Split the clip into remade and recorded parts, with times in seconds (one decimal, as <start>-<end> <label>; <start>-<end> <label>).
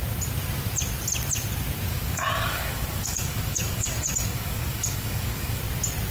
0.0-1.9 recorded; 1.9-5.6 remade; 5.6-6.1 recorded